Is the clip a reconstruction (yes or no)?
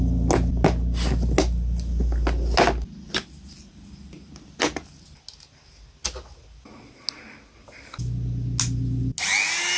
no